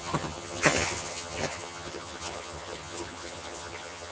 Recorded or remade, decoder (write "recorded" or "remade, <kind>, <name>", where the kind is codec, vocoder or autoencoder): remade, vocoder, HiFi-GAN